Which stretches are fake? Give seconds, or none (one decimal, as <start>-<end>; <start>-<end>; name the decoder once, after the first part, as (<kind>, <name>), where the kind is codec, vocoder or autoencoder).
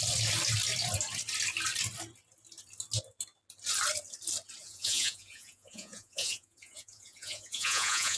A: 4.6-8.2 (vocoder, Vocos)